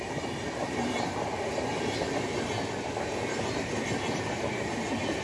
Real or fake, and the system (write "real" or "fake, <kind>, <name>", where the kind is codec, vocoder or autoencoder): real